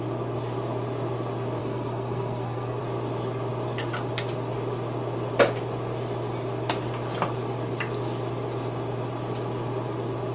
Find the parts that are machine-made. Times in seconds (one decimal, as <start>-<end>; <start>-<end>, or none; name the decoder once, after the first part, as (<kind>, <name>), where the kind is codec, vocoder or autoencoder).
1.6-2.8 (codec, SNAC)